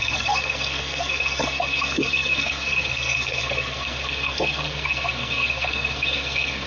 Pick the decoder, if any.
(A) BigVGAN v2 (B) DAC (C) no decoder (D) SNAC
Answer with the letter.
D